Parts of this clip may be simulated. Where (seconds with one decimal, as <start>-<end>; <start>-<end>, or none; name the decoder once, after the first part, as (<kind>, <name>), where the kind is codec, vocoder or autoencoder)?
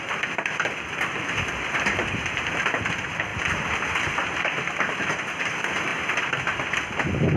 none